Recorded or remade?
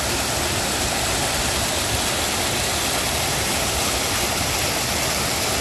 recorded